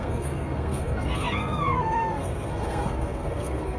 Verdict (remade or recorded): remade